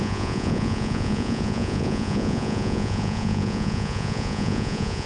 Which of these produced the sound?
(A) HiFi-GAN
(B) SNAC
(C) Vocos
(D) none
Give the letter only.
C